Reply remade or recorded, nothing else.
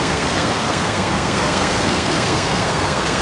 remade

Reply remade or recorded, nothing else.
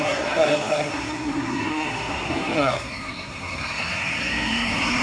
remade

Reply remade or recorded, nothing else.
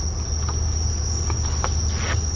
recorded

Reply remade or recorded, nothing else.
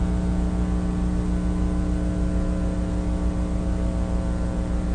recorded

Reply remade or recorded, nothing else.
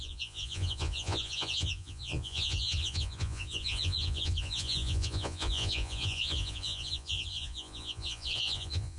remade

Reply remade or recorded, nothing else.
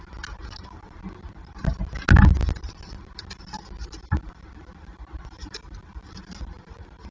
recorded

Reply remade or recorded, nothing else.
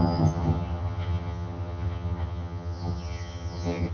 remade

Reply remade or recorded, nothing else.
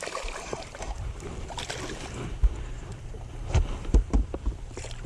remade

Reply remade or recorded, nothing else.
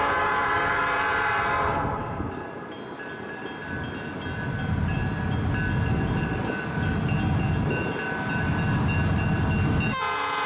recorded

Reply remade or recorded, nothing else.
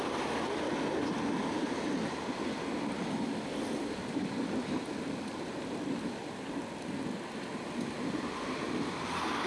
recorded